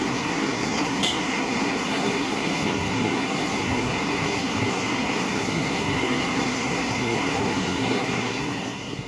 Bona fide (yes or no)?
no